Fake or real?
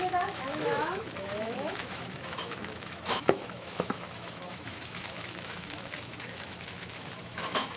fake